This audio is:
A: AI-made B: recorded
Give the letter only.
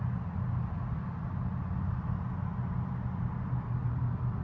B